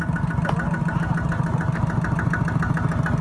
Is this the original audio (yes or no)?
yes